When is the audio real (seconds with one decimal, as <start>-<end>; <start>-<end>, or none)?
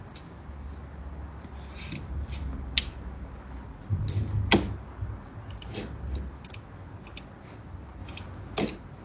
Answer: 0.0-9.0